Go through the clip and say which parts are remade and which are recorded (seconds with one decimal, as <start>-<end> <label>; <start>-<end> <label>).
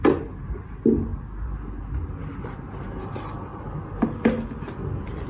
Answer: 0.0-5.3 recorded